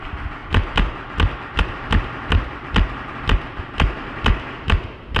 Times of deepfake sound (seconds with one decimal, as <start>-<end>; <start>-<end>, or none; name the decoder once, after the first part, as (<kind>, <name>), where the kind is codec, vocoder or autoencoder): none